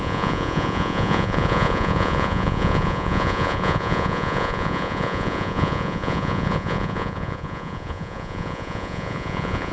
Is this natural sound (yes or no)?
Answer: no